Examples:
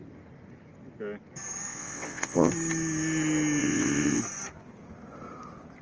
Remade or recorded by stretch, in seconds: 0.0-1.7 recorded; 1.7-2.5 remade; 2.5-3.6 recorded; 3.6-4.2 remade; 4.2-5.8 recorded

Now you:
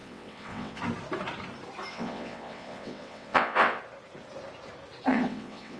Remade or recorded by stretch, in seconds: 0.0-0.8 remade; 0.8-1.9 recorded; 1.9-3.8 remade; 3.8-5.1 recorded; 5.1-5.8 remade

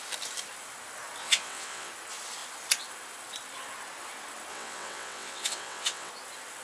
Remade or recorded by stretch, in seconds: 0.0-1.2 recorded; 1.2-1.9 remade; 1.9-4.5 recorded; 4.5-6.1 remade; 6.1-6.6 recorded

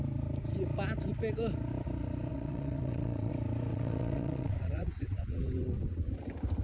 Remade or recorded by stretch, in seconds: 0.0-2.3 recorded; 2.3-3.3 remade; 3.3-3.7 recorded; 3.7-6.1 remade; 6.1-6.6 recorded